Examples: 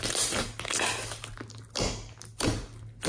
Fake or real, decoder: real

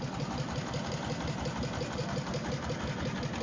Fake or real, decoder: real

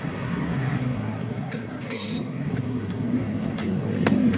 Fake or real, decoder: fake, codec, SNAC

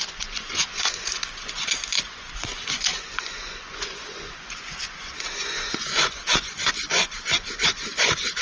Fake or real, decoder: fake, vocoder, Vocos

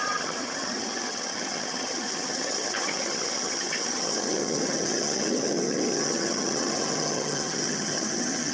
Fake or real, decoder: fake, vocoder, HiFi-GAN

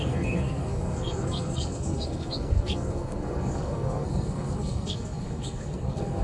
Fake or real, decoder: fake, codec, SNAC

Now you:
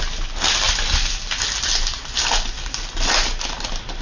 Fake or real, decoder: real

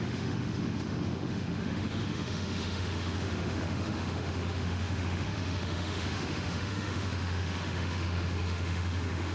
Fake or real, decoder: fake, autoencoder, DAC-VAE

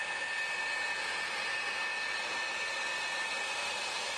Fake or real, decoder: real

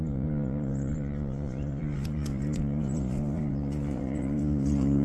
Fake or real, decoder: fake, vocoder, Vocos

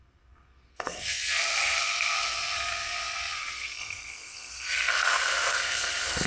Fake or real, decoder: fake, codec, SNAC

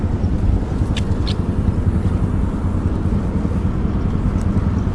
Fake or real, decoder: real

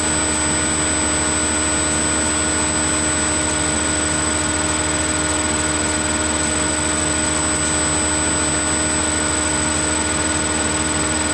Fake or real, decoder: real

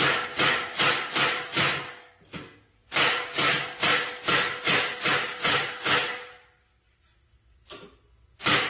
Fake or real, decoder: real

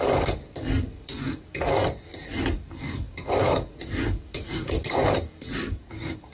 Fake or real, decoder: fake, codec, DAC